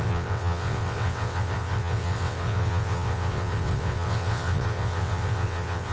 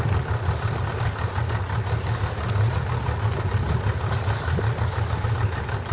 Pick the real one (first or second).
second